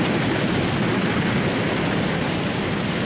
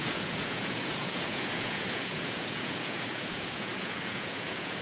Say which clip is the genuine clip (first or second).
first